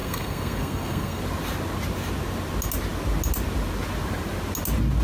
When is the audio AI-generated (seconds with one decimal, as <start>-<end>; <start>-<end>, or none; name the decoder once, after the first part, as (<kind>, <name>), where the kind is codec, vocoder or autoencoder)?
0.0-1.2 (codec, SNAC)